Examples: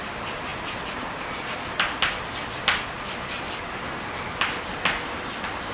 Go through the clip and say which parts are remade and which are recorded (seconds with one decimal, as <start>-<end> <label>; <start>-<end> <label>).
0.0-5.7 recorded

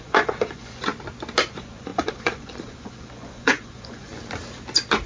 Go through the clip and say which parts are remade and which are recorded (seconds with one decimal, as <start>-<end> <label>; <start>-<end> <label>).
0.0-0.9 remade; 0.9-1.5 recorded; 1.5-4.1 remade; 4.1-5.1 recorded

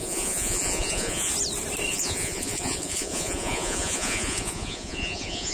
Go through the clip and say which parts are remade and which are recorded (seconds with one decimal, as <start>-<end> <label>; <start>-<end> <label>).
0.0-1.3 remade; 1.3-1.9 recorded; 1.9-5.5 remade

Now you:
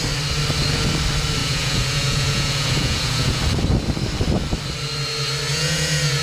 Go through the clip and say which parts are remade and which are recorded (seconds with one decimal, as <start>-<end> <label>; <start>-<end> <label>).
0.0-1.4 recorded; 1.4-3.4 remade; 3.4-5.5 recorded; 5.5-6.2 remade

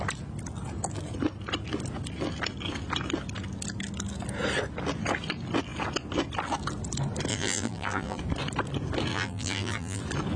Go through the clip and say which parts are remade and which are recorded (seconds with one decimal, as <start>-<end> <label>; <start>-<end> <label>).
0.0-7.3 recorded; 7.3-8.2 remade; 8.2-9.1 recorded; 9.1-10.0 remade; 10.0-10.4 recorded

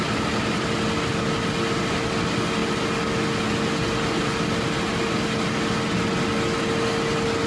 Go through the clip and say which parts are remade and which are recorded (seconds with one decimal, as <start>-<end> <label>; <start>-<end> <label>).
0.0-7.5 recorded

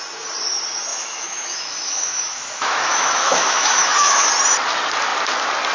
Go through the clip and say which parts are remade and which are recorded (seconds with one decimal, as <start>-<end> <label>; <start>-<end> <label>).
0.0-0.9 recorded; 0.9-4.3 remade; 4.3-5.7 recorded

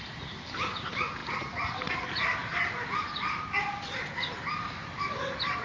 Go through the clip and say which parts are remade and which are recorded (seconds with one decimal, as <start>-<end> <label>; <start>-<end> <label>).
0.0-5.6 recorded